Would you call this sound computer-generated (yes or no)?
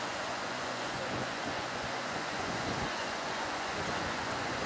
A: yes